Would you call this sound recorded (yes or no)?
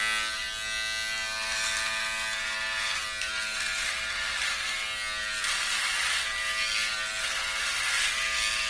yes